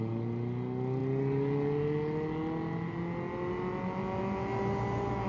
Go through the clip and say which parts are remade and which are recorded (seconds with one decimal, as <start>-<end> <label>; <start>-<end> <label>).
0.0-5.3 recorded